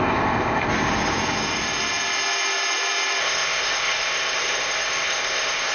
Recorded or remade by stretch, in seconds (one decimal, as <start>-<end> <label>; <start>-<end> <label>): 0.0-0.7 remade; 0.7-3.2 recorded; 3.2-5.7 remade